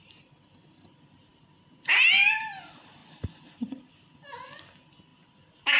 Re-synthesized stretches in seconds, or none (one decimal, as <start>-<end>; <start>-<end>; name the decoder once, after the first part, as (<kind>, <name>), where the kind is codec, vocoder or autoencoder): none